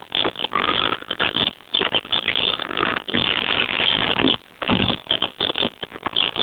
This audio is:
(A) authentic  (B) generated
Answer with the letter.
B